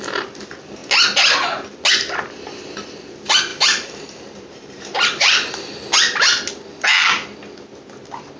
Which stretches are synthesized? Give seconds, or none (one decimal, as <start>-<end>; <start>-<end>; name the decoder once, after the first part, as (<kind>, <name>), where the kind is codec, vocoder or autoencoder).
3.5-5.7 (vocoder, BigVGAN v2)